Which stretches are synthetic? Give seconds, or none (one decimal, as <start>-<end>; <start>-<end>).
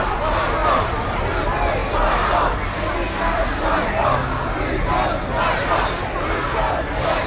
none